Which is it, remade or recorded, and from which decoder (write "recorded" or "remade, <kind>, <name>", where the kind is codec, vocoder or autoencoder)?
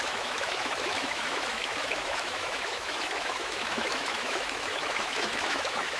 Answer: remade, autoencoder, DAC-VAE